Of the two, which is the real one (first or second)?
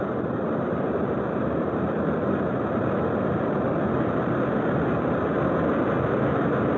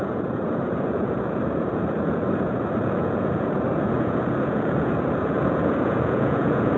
first